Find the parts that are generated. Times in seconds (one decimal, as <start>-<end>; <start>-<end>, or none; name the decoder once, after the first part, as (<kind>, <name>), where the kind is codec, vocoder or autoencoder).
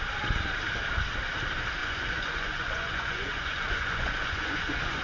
1.8-5.0 (vocoder, Vocos)